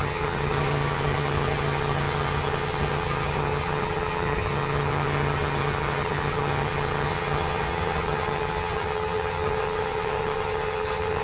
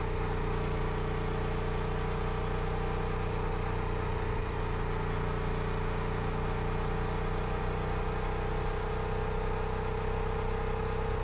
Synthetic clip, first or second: first